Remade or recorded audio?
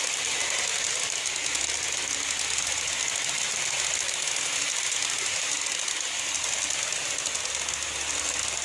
recorded